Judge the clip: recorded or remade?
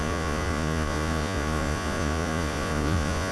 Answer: remade